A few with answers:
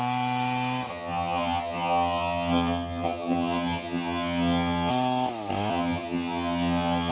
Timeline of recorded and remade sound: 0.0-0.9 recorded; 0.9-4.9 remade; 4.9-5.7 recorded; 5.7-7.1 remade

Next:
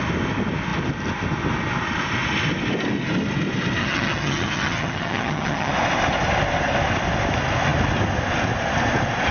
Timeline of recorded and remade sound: 0.0-3.8 recorded; 3.8-5.7 remade; 5.7-9.3 recorded

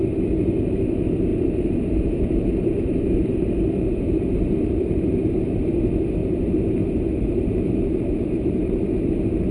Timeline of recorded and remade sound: 0.0-1.3 recorded; 1.3-5.8 remade; 5.8-6.2 recorded; 6.2-8.9 remade; 8.9-9.5 recorded

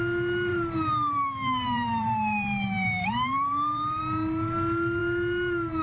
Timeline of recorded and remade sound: 0.0-0.5 recorded; 0.5-4.0 remade; 4.0-5.8 recorded

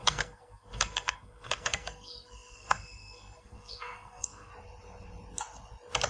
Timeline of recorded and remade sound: 0.0-4.5 remade; 4.5-6.1 recorded

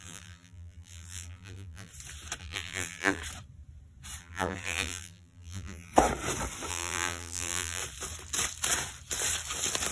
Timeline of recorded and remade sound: 0.0-1.9 remade; 1.9-2.4 recorded; 2.4-3.2 remade; 3.2-4.2 recorded; 4.2-5.9 remade; 5.9-6.7 recorded; 6.7-7.8 remade; 7.8-9.9 recorded